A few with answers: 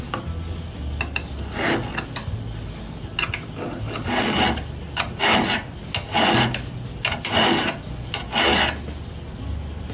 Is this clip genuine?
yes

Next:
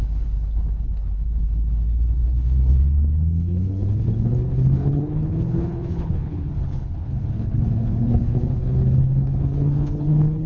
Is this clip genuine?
no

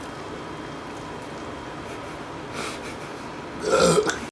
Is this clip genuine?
yes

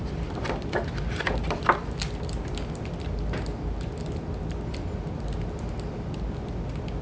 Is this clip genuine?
yes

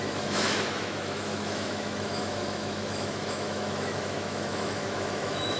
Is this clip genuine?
no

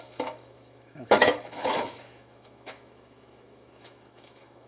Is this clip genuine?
no